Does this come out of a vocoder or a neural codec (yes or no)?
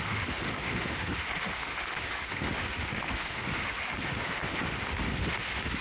yes